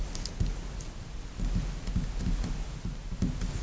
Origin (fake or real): real